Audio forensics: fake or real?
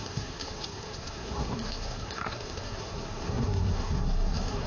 fake